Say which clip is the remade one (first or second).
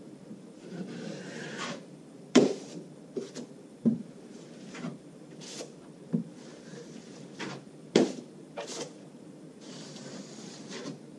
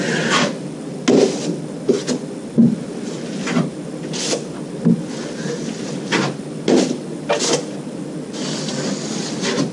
first